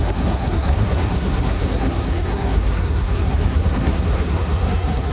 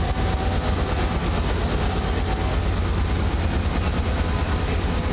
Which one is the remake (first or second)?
first